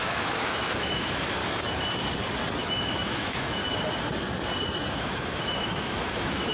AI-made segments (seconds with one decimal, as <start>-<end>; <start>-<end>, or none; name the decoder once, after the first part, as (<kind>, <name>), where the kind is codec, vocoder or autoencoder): 0.0-1.4 (autoencoder, DAC-VAE); 2.6-3.6; 5.0-6.5